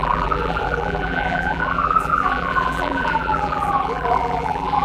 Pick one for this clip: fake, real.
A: fake